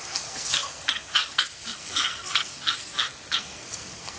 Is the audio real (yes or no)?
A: no